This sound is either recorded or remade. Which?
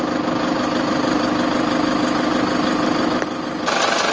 recorded